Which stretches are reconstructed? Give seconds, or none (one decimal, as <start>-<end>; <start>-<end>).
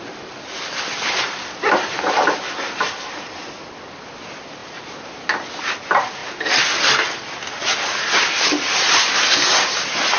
0.0-6.2; 8.3-10.2